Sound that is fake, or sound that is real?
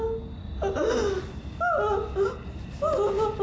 real